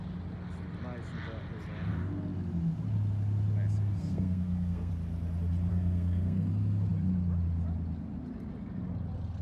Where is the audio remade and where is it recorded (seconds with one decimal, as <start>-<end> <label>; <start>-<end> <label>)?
0.0-4.0 recorded; 4.0-4.9 remade; 4.9-5.7 recorded; 5.7-6.5 remade; 6.5-9.4 recorded